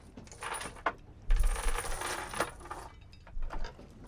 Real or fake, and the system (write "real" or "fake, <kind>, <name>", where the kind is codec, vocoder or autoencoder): real